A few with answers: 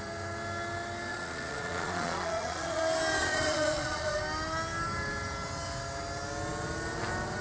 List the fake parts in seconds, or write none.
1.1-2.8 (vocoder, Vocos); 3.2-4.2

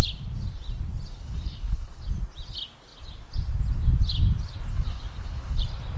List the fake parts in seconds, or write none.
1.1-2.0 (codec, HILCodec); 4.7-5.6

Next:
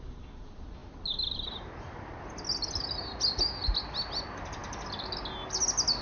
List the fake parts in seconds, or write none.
none